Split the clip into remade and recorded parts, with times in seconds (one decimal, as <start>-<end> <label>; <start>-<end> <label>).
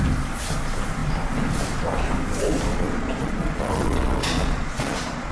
0.0-2.7 recorded; 2.7-5.3 remade